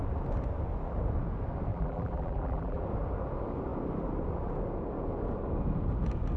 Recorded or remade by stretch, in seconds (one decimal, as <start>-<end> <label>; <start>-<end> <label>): 0.0-1.7 recorded; 1.7-2.8 remade; 2.8-6.4 recorded